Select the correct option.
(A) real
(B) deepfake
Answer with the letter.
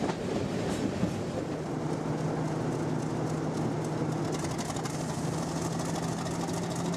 A